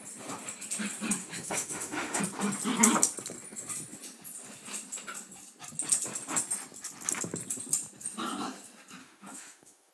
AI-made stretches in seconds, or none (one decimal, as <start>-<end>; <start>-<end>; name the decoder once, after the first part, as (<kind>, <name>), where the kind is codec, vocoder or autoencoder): 1.2-2.2 (autoencoder, DAC-VAE); 9.0-9.9